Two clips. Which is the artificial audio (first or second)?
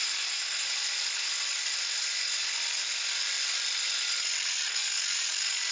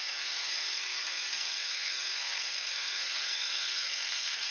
second